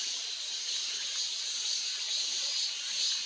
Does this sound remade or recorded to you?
recorded